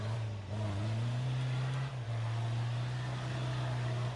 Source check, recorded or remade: recorded